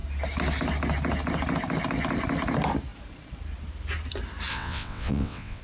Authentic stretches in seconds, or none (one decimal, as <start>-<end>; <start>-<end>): 0.0-4.5